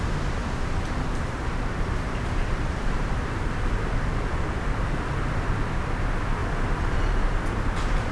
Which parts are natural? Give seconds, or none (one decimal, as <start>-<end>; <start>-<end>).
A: 0.0-0.4; 5.3-6.4; 7.1-8.1